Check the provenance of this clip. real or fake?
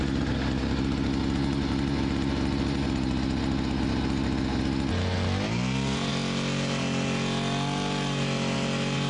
real